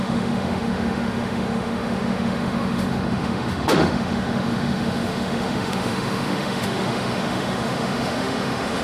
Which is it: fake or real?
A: fake